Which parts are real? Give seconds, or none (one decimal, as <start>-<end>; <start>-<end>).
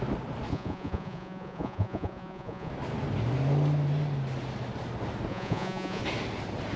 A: 0.0-0.5; 2.7-5.3; 6.0-6.8